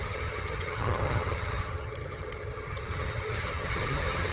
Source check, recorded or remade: remade